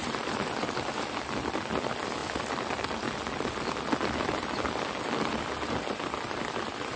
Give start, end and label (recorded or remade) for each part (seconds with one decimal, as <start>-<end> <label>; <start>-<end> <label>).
0.0-7.0 recorded